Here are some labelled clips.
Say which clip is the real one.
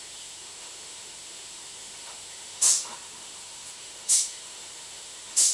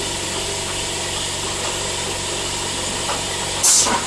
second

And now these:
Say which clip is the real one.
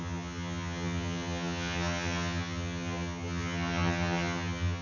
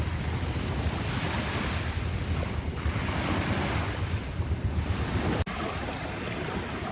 second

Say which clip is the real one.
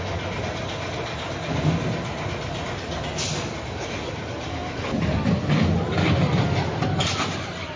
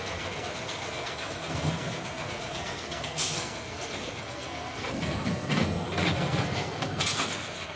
first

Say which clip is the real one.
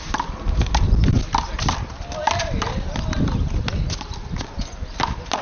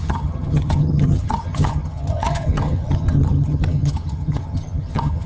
first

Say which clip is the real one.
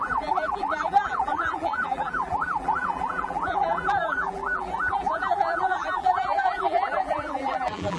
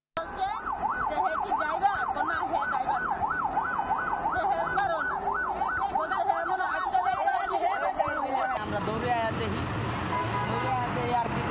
second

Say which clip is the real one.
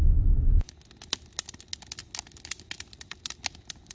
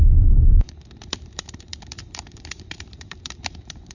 first